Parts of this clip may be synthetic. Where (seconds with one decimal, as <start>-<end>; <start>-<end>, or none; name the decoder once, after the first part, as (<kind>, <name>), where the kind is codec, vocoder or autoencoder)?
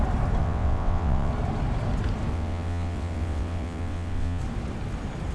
0.4-1.3 (vocoder, WaveNeXt); 2.3-4.4